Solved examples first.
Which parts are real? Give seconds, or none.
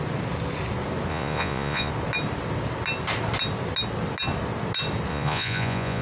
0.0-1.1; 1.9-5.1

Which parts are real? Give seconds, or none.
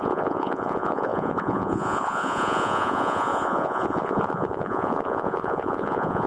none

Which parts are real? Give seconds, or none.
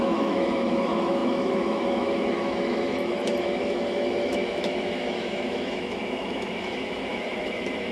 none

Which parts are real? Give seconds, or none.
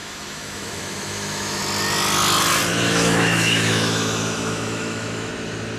1.6-2.7; 5.3-5.8